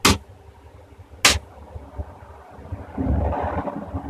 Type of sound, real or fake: real